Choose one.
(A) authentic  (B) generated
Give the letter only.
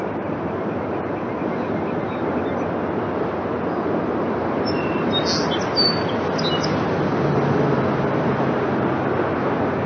A